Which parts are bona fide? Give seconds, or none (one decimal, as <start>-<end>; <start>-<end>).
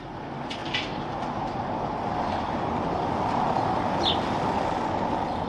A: 0.0-5.5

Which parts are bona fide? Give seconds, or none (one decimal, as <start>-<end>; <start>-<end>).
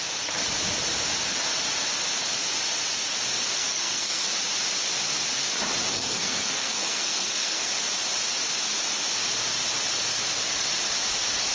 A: 0.0-3.6; 4.3-5.9; 7.7-11.5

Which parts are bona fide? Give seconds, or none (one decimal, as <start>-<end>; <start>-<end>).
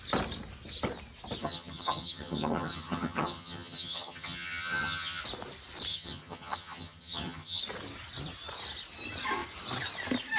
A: 0.0-1.4; 5.2-5.9; 7.6-10.4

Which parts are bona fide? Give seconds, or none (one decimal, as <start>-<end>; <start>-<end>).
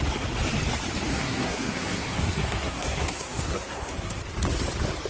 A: 0.0-1.1; 4.2-5.1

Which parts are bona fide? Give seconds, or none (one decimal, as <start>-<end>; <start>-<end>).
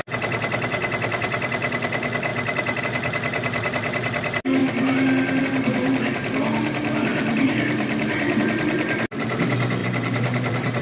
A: 0.0-7.1; 8.4-9.8